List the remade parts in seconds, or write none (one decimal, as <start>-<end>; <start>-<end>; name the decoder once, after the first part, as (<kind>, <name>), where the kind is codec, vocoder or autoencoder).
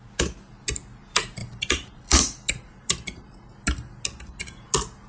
1.4-3.5 (vocoder, BigVGAN v2)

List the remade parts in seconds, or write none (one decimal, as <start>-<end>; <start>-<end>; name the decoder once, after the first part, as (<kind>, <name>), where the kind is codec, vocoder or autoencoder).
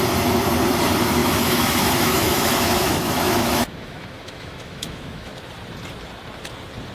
1.2-5.3 (autoencoder, DAC-VAE)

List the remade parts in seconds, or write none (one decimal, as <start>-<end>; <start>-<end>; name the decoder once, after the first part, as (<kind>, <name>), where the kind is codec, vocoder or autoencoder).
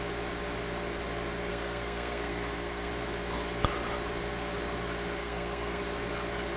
1.5-2.9 (codec, SNAC); 5.2-5.8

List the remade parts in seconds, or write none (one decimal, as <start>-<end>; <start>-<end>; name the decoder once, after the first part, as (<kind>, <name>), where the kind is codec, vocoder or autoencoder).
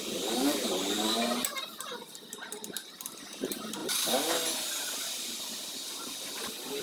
none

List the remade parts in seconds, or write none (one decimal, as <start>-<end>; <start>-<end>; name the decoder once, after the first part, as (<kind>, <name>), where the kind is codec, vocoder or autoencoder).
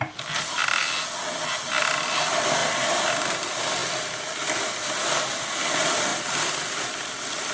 0.0-0.8 (vocoder, BigVGAN v2); 1.8-2.6; 3.3-6.1; 6.7-7.5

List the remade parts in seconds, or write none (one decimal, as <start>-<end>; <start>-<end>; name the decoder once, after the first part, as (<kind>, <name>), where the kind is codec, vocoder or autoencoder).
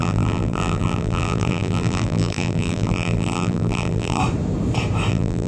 0.0-4.2 (vocoder, BigVGAN v2); 5.1-5.5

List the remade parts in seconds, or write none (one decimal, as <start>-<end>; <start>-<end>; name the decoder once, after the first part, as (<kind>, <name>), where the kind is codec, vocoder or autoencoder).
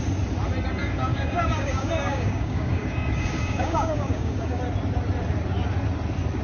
0.8-4.6 (codec, DAC)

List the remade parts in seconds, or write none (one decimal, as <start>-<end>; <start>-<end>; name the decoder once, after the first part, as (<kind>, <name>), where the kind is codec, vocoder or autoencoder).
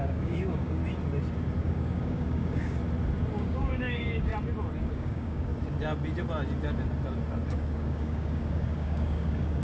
0.0-0.8 (codec, DAC); 1.6-2.8; 3.3-4.3; 4.8-5.5; 7.5-9.6